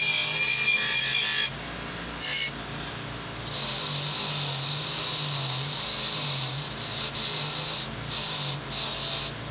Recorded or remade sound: recorded